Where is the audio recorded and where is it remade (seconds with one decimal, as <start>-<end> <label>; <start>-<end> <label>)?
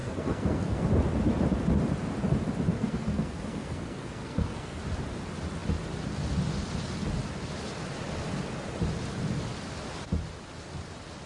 0.0-0.9 remade; 0.9-2.7 recorded; 2.7-4.8 remade; 4.8-11.3 recorded